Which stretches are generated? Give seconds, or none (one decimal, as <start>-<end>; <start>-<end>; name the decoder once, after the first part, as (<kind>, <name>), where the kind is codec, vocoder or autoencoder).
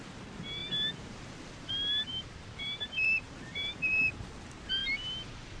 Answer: 2.1-4.0 (vocoder, BigVGAN v2)